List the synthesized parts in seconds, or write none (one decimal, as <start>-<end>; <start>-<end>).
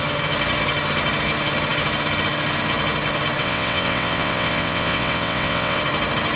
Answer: 3.4-5.8